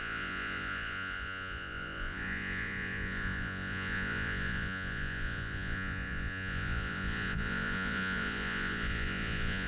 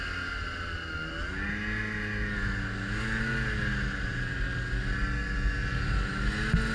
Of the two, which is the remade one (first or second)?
first